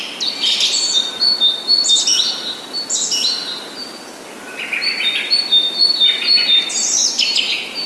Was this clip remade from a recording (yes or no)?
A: no